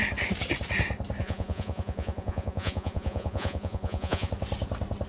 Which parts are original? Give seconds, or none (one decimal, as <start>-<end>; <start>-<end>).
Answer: 0.0-1.2; 4.3-5.1